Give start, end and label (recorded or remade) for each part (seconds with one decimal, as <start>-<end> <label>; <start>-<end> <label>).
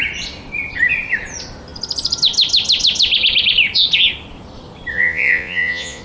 0.0-4.9 recorded; 4.9-6.0 remade